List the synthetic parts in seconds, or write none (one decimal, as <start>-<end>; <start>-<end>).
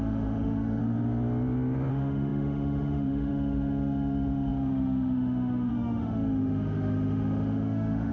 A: 0.0-0.8; 1.9-8.1